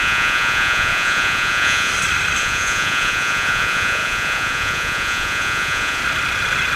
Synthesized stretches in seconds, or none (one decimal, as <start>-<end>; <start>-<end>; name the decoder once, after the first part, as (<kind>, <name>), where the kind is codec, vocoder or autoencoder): 0.0-1.9 (vocoder, Vocos); 2.4-6.0